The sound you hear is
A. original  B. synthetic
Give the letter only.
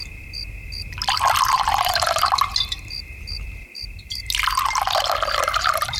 B